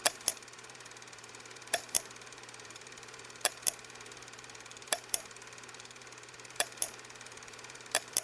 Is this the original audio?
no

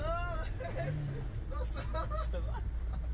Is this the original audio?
yes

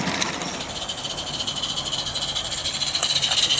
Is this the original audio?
no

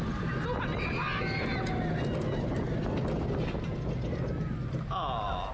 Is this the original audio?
yes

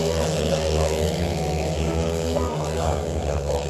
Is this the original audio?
no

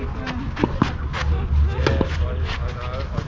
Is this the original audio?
yes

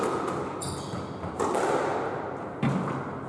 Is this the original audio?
yes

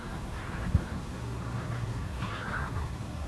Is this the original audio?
no